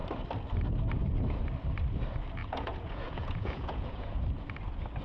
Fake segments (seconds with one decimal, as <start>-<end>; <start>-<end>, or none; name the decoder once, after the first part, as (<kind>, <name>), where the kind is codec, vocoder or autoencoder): 2.4-4.2 (vocoder, Vocos)